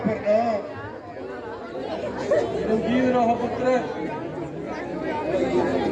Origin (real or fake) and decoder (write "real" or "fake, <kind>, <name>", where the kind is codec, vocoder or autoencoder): real